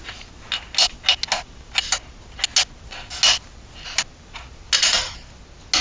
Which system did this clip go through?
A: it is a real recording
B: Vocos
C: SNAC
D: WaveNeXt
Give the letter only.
A